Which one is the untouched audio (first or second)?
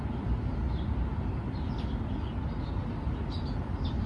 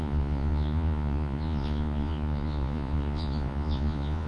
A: first